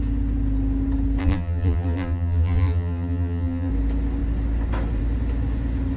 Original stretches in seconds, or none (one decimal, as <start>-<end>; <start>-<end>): 0.0-1.2; 3.7-6.0